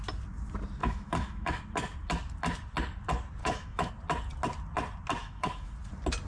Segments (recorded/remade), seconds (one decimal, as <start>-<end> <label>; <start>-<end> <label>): 0.0-0.8 recorded; 0.8-1.6 remade; 1.6-3.4 recorded; 3.4-3.9 remade; 3.9-5.2 recorded; 5.2-5.7 remade; 5.7-6.3 recorded